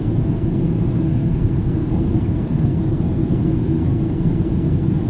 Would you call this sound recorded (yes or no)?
no